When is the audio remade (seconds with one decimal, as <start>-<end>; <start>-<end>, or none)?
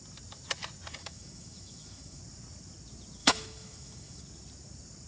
1.0-2.2; 3.2-4.2